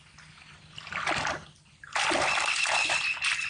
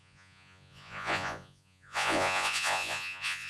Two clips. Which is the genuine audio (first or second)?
first